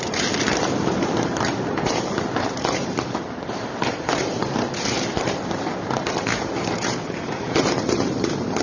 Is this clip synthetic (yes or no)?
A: yes